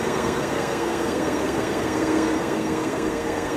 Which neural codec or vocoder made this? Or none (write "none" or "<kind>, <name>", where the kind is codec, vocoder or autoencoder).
codec, SNAC